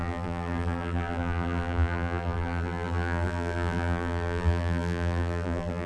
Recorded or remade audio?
remade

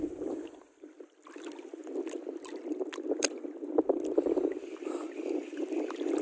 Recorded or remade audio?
recorded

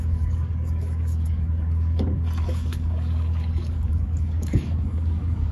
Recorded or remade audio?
remade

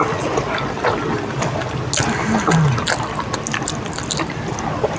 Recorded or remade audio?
recorded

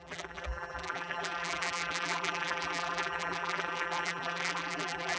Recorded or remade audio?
remade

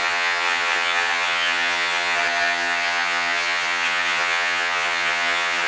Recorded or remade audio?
remade